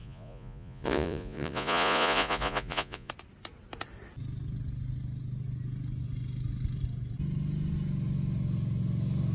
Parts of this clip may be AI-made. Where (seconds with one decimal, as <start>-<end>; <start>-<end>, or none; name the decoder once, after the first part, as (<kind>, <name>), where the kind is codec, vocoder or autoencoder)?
0.0-3.1 (vocoder, Vocos)